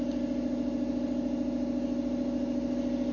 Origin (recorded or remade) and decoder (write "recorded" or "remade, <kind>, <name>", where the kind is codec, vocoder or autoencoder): recorded